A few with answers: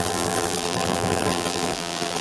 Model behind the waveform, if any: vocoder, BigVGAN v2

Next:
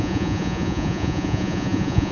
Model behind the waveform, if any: vocoder, Vocos